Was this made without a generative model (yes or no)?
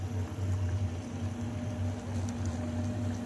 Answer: yes